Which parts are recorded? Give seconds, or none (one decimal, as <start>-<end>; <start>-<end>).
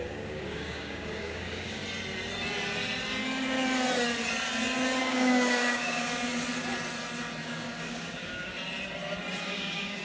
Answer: 1.8-5.0; 6.3-7.4; 8.5-9.4